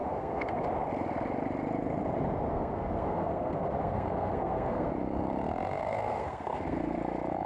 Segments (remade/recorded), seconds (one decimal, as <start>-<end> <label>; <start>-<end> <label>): 0.0-0.6 remade; 0.6-2.5 recorded; 2.5-4.9 remade; 4.9-5.8 recorded; 5.8-7.0 remade; 7.0-7.5 recorded